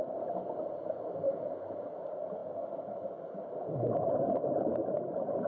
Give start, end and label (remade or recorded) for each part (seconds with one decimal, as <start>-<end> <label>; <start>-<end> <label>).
0.0-5.5 recorded